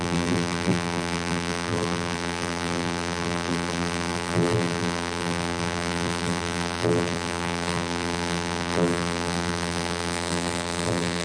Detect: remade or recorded remade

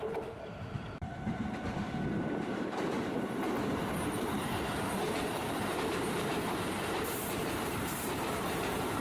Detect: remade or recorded remade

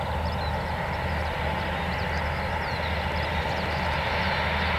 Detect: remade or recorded recorded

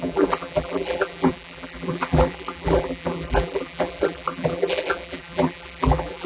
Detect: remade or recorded remade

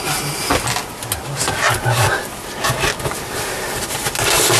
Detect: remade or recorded recorded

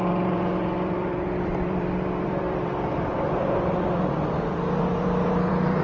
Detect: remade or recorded remade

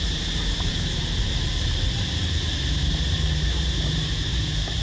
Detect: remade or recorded remade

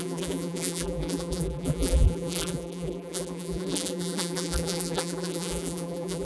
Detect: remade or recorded remade